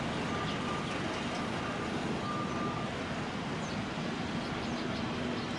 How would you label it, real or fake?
real